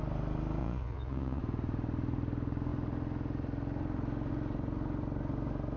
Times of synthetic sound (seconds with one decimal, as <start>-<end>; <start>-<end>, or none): 0.6-1.4